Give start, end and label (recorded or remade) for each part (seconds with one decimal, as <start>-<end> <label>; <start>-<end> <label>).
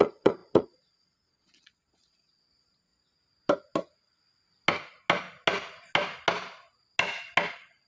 0.0-2.9 remade; 2.9-7.5 recorded; 7.5-7.9 remade